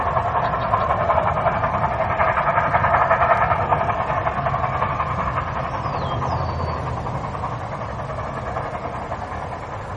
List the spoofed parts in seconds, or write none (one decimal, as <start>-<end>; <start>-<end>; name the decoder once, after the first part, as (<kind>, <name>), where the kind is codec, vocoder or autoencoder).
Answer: none